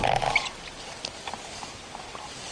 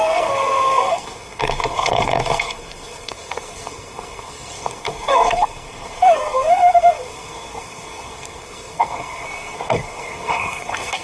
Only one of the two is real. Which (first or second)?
first